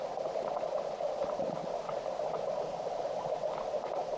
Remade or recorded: recorded